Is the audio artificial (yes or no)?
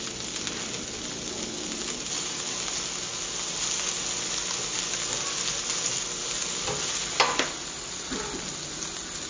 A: no